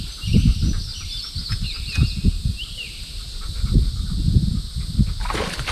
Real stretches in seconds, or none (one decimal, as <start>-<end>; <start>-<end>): 0.0-5.7